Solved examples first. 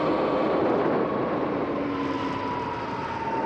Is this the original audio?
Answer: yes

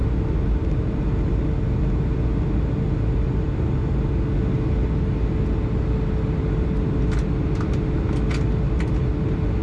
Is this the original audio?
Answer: yes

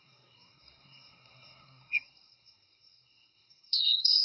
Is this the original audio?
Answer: no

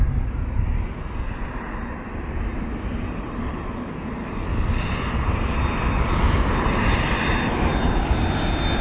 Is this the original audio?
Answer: yes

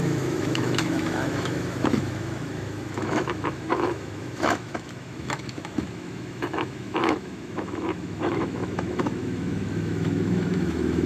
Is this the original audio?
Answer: no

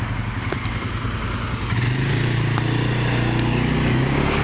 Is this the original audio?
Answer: yes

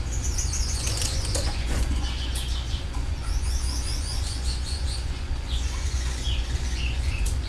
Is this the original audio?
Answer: no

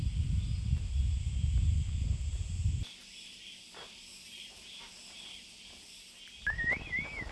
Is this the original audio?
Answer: no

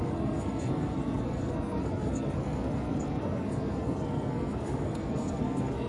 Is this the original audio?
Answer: no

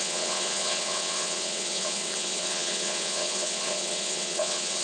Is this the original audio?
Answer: no